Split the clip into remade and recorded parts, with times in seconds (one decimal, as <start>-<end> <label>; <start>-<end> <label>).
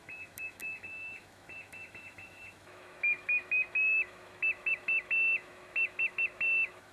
0.0-6.9 remade